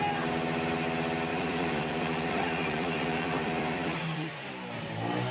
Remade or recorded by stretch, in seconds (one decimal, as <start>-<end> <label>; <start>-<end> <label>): 0.0-1.3 recorded; 1.3-4.5 remade; 4.5-5.3 recorded